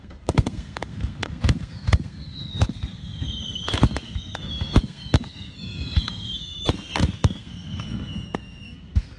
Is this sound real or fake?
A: fake